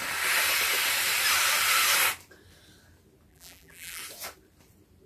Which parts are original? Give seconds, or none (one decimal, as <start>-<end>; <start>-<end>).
0.0-3.3; 4.0-5.1